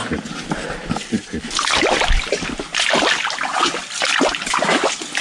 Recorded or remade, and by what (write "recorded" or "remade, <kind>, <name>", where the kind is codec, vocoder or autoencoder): recorded